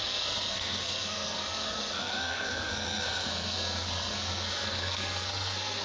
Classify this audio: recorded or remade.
remade